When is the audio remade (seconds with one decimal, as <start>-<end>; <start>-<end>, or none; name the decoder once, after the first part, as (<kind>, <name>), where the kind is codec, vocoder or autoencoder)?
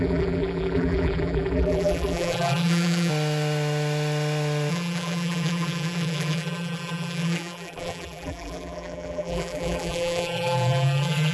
0.0-3.1 (vocoder, BigVGAN v2); 4.7-11.3